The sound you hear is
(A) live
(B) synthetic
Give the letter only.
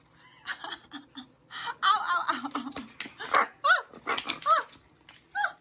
A